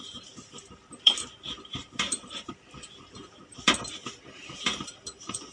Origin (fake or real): fake